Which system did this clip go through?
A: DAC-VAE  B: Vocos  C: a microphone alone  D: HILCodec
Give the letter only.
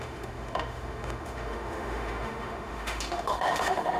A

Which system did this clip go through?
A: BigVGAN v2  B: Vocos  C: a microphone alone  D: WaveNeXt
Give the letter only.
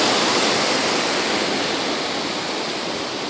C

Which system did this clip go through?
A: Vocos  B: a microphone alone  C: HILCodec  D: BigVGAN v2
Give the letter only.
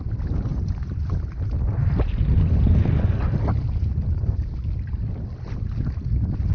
B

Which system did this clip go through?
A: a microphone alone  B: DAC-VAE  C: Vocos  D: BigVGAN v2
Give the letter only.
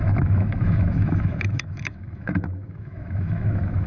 B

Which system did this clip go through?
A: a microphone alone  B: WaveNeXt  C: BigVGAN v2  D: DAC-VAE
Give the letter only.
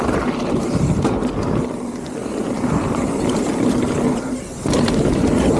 C